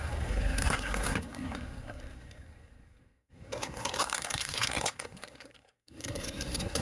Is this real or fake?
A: fake